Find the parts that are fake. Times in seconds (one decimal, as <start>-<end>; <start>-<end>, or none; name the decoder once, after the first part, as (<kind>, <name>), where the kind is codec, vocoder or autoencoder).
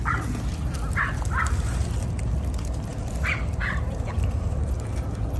0.5-1.2 (vocoder, BigVGAN v2); 2.9-4.1